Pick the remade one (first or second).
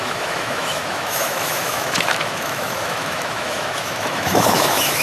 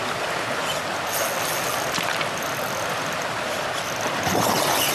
first